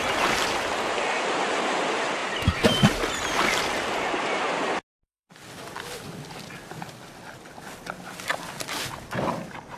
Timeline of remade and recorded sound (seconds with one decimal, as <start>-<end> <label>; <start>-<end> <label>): 0.0-9.8 recorded